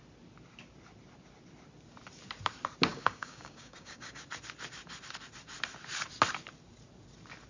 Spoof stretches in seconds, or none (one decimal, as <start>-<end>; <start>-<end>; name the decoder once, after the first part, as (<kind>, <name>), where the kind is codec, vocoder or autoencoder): 2.9-4.2 (codec, DAC)

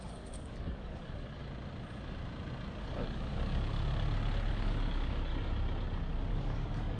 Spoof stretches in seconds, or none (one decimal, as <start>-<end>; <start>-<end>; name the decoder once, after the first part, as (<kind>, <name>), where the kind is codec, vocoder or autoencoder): 0.0-1.4 (codec, DAC); 2.8-3.7; 4.5-5.3; 6.3-7.0